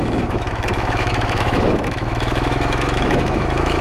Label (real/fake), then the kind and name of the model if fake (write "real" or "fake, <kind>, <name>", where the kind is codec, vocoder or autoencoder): fake, autoencoder, DAC-VAE